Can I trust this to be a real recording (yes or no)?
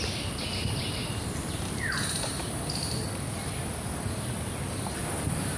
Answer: yes